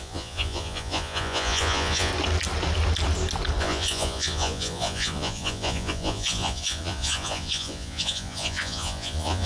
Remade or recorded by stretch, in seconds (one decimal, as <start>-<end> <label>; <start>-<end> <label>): 0.0-2.1 remade; 2.1-3.6 recorded; 3.6-9.5 remade